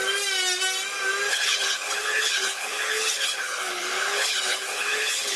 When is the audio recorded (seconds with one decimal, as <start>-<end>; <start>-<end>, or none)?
0.0-1.3